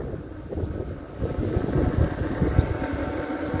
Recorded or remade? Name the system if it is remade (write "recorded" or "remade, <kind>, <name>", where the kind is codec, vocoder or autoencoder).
recorded